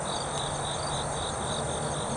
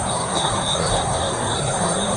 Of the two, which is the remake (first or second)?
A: second